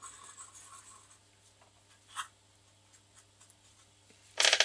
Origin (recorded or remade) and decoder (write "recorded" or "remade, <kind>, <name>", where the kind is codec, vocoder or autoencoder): recorded